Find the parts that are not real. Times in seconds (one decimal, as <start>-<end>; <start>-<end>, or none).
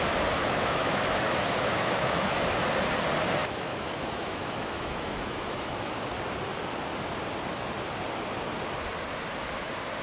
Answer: 0.4-2.4; 3.4-5.9